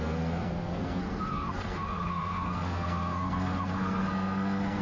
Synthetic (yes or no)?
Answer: yes